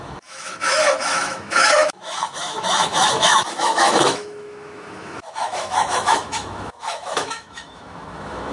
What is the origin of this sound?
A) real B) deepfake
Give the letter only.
B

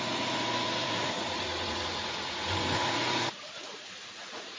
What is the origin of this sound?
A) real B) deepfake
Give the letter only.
B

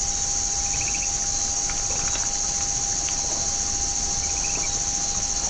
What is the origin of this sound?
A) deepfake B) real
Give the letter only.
B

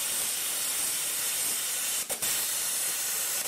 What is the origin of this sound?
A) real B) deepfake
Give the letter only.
B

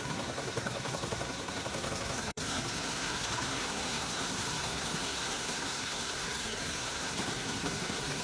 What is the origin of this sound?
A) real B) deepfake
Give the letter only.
B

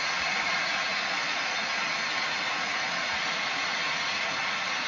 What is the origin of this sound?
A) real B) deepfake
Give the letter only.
B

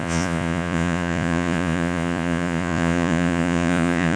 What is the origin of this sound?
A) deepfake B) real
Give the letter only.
A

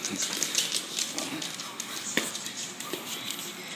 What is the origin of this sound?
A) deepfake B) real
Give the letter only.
B